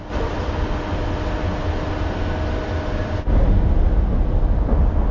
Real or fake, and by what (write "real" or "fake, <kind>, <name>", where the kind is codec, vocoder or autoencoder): real